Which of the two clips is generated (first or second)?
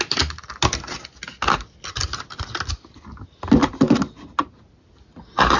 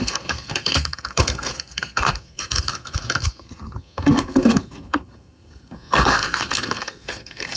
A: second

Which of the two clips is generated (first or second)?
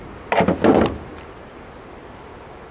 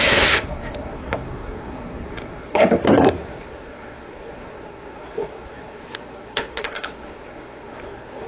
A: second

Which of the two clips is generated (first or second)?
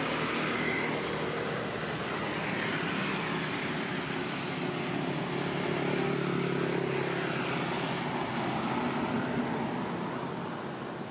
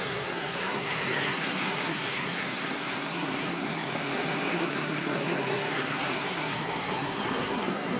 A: second